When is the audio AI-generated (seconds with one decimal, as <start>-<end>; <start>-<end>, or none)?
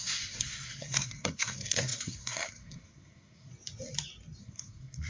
0.0-3.5; 4.4-5.1